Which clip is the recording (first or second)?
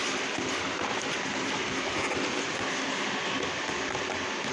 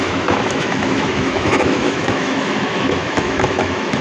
first